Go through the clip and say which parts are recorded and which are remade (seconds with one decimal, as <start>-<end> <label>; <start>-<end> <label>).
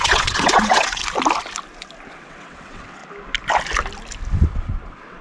0.0-1.0 remade; 1.0-2.1 recorded; 2.1-3.0 remade; 3.0-4.3 recorded; 4.3-5.2 remade